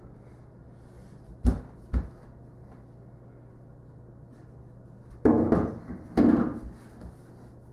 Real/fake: real